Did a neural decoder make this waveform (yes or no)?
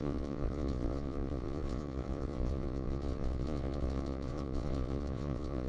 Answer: yes